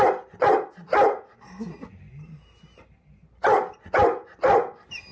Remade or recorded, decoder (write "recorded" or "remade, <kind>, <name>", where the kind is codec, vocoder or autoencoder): recorded